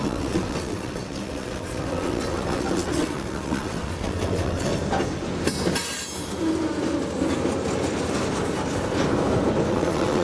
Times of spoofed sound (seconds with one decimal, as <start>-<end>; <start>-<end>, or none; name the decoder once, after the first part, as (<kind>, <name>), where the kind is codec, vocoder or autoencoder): 0.0-4.7 (vocoder, WaveNeXt); 9.7-10.2